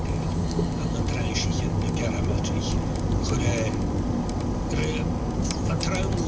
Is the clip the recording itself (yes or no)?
yes